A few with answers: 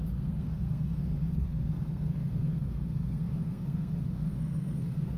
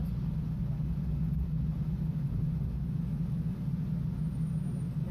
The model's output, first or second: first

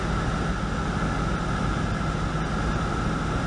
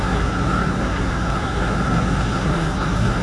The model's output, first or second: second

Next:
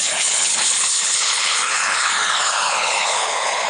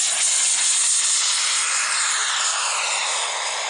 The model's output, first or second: first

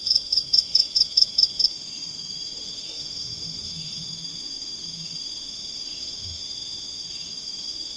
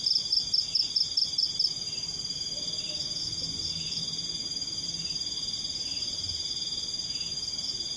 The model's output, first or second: first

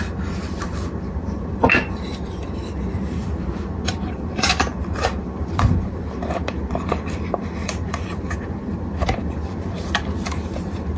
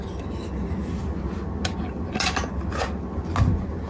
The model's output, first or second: first